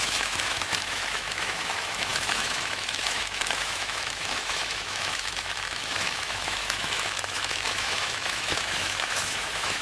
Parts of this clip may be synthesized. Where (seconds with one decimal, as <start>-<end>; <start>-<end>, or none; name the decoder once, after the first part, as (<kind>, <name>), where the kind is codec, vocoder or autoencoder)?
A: 0.0-9.8 (autoencoder, DAC-VAE)